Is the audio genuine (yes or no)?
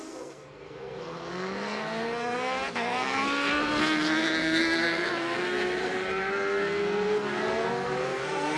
no